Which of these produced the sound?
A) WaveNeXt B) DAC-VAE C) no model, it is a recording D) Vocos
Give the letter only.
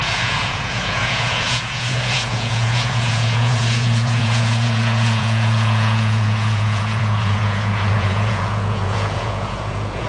D